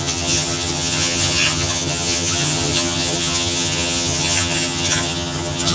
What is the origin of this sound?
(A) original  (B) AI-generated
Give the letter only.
B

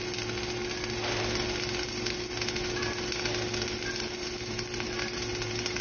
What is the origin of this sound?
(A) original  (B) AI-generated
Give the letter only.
A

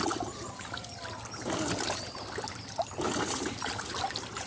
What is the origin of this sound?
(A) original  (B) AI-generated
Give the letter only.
A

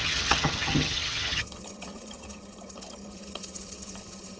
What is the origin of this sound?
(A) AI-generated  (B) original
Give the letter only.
A